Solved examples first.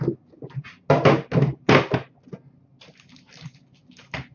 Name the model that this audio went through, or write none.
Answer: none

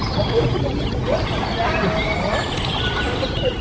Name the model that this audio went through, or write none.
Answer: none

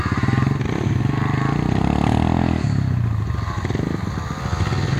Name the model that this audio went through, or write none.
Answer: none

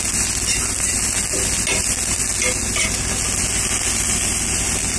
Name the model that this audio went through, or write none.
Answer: none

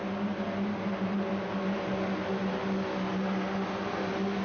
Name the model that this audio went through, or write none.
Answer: none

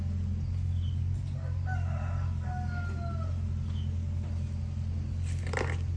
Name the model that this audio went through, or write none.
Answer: none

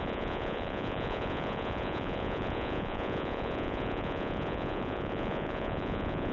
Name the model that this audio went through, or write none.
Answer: vocoder, Vocos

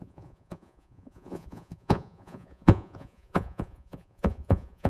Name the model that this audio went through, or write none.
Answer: vocoder, Vocos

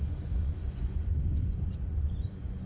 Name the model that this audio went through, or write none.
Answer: vocoder, Vocos